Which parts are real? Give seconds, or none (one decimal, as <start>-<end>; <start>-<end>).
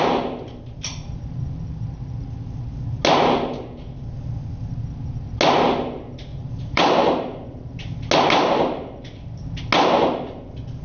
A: 0.0-6.3; 7.8-10.8